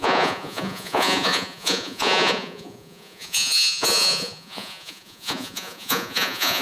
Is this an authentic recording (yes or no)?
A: no